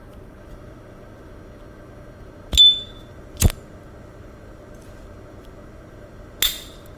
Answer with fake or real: real